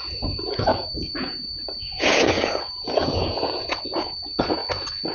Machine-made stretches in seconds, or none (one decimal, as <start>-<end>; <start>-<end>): 0.0-4.6